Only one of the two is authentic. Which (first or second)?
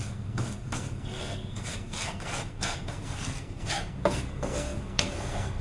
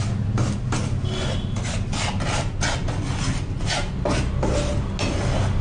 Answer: second